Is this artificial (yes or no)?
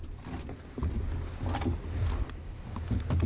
no